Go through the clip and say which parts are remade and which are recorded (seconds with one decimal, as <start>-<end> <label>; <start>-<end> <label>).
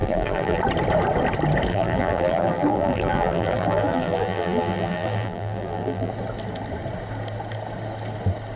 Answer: 0.0-0.6 remade; 0.6-1.7 recorded; 1.7-6.1 remade; 6.1-8.6 recorded